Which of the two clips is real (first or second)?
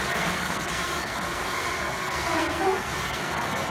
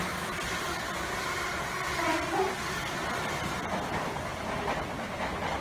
second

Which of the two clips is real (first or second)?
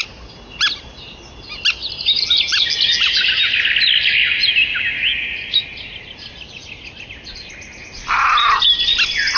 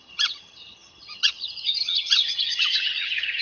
first